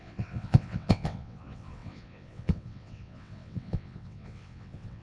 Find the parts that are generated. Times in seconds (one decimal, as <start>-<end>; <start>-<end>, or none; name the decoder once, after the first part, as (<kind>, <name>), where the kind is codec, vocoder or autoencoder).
0.0-5.0 (vocoder, WaveNeXt)